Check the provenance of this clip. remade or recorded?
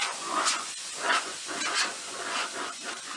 remade